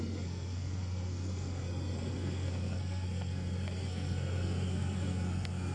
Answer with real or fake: fake